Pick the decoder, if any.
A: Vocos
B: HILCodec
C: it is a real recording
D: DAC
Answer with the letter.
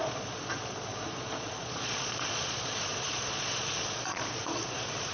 A